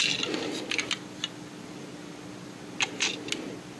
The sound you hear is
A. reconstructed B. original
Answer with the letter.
B